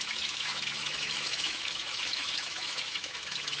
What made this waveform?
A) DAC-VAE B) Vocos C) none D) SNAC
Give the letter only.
A